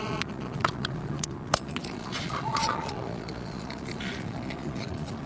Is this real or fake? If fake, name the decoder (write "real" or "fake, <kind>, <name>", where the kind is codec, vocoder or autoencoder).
fake, vocoder, Vocos